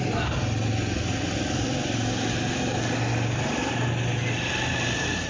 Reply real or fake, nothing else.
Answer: real